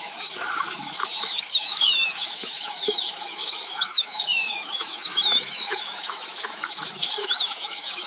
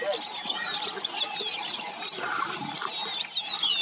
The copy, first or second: first